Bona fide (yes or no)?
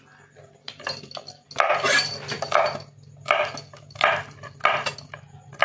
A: yes